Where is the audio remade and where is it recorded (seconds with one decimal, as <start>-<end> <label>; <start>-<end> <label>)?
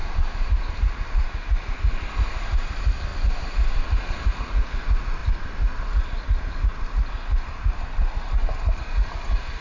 0.0-9.6 recorded